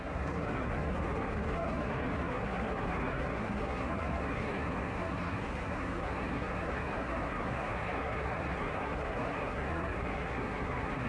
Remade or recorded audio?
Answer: remade